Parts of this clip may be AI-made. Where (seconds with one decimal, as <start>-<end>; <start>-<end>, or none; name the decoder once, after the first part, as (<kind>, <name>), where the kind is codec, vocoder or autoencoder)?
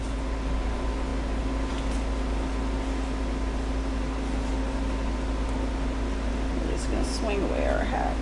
none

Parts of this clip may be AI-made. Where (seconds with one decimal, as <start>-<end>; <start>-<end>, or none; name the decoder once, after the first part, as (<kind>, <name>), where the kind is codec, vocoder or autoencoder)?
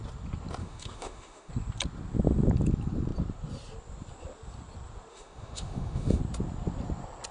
0.6-1.5 (autoencoder, DAC-VAE); 5.1-6.2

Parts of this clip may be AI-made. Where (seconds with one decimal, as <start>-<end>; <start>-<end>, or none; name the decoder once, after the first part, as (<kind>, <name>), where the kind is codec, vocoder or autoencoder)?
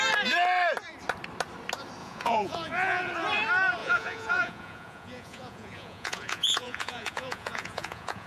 2.0-3.0 (vocoder, Vocos); 3.8-8.3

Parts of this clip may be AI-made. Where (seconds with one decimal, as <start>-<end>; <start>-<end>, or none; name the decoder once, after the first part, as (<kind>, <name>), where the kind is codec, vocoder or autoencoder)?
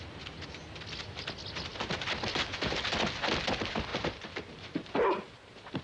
3.9-4.9 (vocoder, BigVGAN v2)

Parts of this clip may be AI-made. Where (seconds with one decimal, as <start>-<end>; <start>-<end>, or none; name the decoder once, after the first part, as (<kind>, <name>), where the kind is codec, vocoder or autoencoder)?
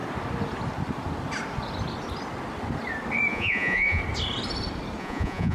3.3-4.0 (vocoder, Vocos); 5.0-5.5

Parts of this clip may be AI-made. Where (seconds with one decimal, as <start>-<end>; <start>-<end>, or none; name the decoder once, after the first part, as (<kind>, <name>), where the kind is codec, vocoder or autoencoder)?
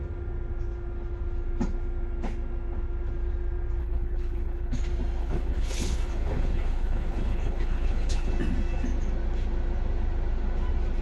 3.8-4.8 (codec, HILCodec); 5.2-8.3